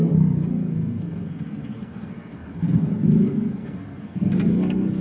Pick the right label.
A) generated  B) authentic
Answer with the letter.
A